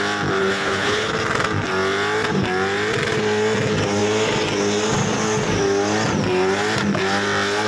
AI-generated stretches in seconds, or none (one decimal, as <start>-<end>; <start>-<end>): 0.4-1.1

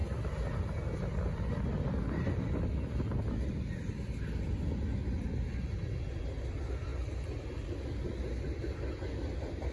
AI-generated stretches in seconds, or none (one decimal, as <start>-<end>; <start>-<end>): none

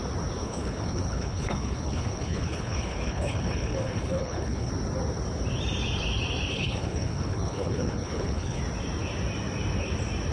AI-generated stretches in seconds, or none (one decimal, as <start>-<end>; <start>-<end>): 0.4-4.7; 6.5-8.6